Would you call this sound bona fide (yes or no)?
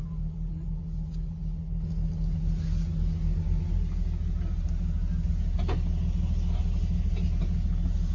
yes